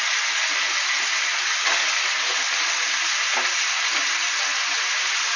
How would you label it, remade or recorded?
recorded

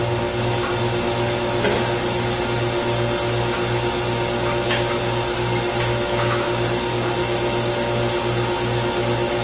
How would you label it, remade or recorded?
recorded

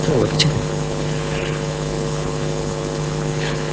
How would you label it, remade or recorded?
remade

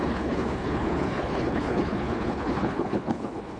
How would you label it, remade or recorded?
remade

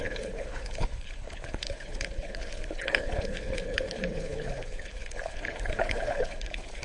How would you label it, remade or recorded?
remade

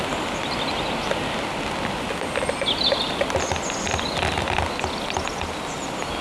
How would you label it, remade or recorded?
recorded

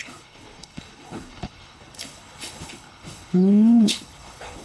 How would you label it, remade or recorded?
remade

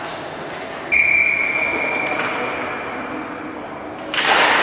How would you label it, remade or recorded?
recorded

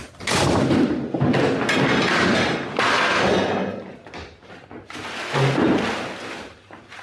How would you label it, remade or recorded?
recorded